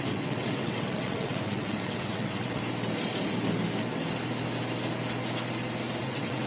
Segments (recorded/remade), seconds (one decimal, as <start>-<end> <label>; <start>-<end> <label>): 0.0-2.6 remade; 2.6-6.0 recorded; 6.0-6.5 remade